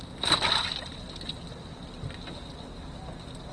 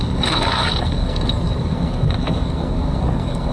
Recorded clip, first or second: first